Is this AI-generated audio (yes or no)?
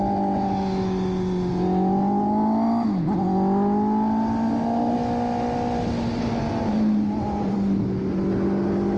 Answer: no